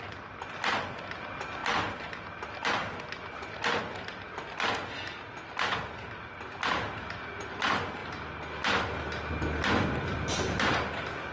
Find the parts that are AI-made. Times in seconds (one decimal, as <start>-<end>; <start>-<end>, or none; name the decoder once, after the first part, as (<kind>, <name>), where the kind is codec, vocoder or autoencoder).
none

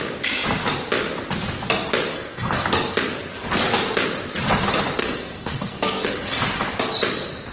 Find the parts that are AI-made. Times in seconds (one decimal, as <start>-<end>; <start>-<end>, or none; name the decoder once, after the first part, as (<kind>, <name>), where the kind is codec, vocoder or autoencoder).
2.1-2.7 (codec, SNAC); 5.0-6.4

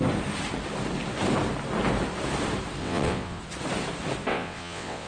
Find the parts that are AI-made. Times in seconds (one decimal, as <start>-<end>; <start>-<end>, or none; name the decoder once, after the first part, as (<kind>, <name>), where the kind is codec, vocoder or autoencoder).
2.8-3.4 (vocoder, WaveNeXt); 4.3-5.1

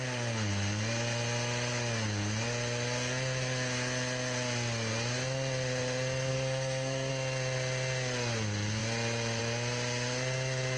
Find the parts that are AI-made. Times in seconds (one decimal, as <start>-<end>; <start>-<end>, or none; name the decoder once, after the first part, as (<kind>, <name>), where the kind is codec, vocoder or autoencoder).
6.3-7.1 (codec, SNAC)

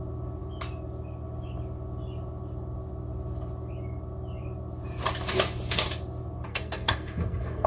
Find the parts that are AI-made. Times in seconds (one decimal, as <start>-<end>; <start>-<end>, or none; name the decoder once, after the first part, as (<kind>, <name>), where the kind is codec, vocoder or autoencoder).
6.5-7.7 (codec, SNAC)

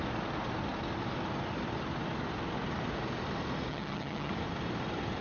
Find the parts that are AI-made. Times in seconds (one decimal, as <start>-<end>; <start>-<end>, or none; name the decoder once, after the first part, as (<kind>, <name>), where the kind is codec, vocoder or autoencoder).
3.7-4.3 (vocoder, HiFi-GAN)